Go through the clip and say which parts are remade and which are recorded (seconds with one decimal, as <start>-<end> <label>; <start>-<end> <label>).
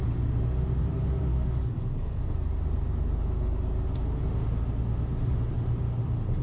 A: 0.0-1.3 recorded; 1.3-2.2 remade; 2.2-6.4 recorded